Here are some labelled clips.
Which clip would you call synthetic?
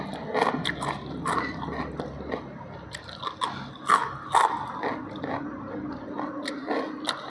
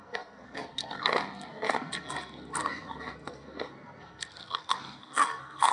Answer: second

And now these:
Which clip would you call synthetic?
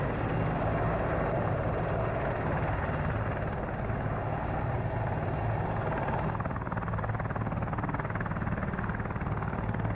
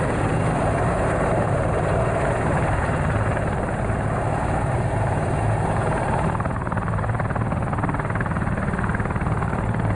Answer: second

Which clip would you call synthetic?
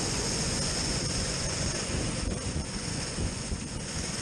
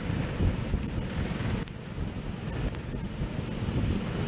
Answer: first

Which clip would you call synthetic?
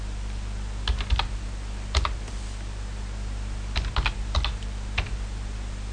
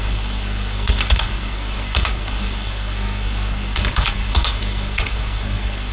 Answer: second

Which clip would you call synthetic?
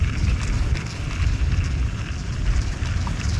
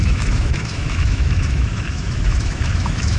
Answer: second